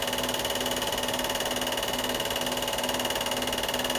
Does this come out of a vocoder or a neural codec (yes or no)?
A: no